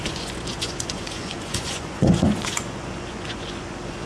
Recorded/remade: remade